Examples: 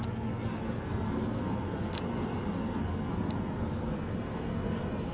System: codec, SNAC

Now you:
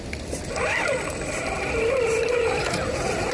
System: none